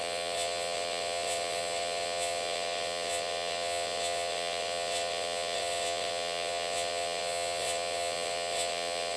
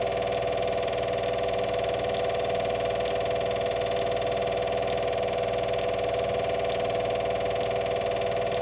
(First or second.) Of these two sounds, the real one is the second